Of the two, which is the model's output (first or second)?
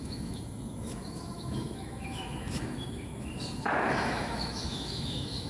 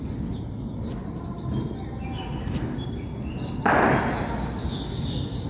first